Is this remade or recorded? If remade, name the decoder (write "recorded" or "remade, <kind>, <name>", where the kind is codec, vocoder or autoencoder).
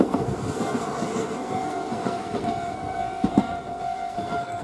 remade, codec, SNAC